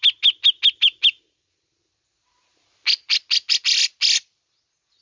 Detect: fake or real real